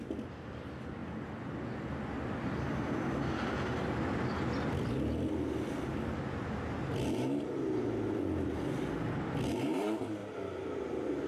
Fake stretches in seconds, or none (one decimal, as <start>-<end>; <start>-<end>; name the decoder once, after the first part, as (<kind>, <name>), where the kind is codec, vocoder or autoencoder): 10.2-11.3 (vocoder, BigVGAN v2)